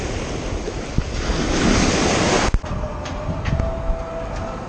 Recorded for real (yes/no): yes